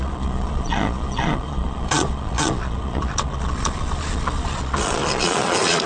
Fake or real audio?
fake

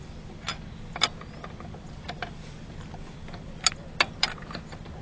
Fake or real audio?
real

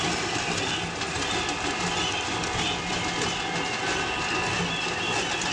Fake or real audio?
real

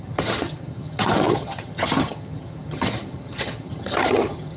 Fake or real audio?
fake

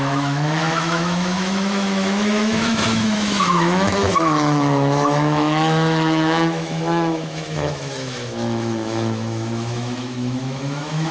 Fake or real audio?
fake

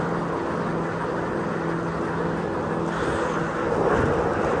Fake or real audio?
real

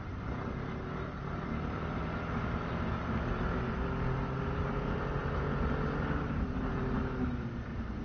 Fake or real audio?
real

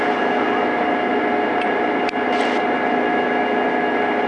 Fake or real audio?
real